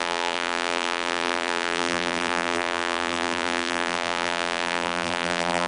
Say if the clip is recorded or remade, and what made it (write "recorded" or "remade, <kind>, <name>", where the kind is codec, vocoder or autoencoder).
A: remade, vocoder, BigVGAN v2